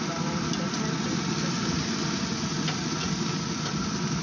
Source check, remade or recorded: recorded